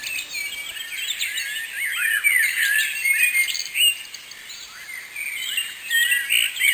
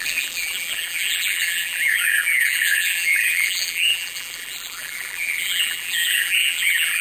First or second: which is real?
first